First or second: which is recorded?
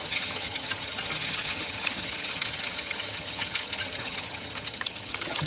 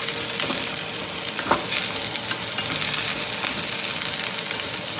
second